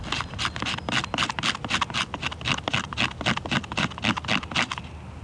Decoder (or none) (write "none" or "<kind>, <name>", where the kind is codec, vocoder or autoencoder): none